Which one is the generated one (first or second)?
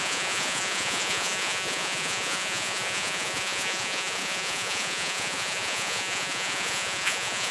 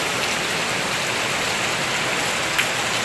first